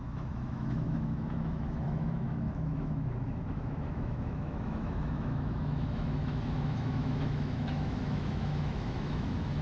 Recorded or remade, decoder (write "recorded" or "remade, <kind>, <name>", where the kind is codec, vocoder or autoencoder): remade, autoencoder, DAC-VAE